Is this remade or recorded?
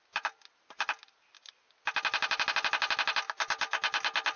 recorded